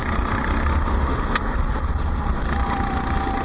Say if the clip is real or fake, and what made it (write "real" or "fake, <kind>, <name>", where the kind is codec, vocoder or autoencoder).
real